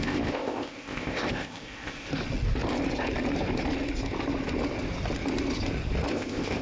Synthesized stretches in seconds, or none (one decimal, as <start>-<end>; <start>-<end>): 0.0-2.1; 6.1-6.6